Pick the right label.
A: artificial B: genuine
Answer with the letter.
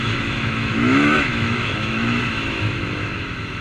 A